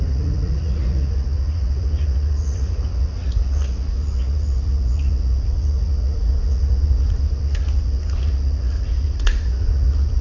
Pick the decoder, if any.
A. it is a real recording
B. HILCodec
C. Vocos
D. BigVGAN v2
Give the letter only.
C